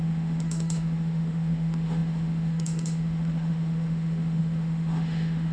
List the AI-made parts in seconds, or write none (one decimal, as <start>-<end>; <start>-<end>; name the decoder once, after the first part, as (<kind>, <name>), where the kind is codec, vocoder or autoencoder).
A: 0.0-5.5 (autoencoder, DAC-VAE)